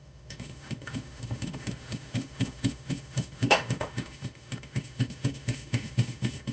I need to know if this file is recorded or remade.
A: remade